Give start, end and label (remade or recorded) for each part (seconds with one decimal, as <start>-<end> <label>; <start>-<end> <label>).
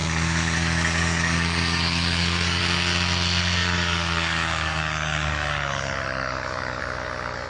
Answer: 0.0-2.6 remade; 2.6-3.6 recorded; 3.6-6.8 remade; 6.8-7.5 recorded